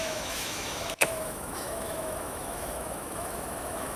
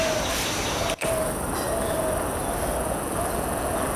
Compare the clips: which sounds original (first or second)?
second